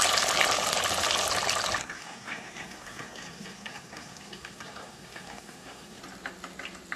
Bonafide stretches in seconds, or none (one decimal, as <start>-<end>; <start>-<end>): 0.0-1.8; 6.0-7.0